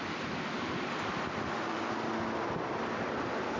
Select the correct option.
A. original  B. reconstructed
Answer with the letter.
A